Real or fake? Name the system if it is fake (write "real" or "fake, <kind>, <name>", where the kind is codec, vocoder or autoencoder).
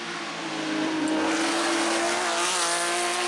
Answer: real